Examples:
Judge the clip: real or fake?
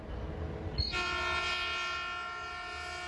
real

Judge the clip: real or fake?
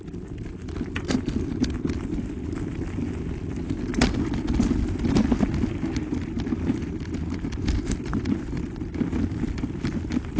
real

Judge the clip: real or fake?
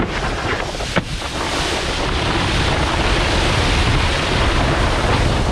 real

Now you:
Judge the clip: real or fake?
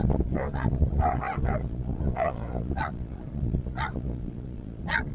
fake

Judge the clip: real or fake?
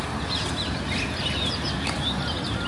real